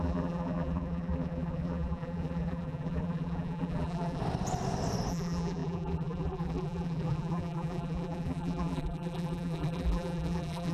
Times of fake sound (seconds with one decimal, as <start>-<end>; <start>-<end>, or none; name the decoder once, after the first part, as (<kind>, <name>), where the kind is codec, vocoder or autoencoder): 0.0-4.2 (vocoder, BigVGAN v2); 5.1-10.7